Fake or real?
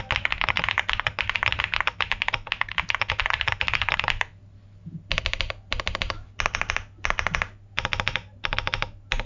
real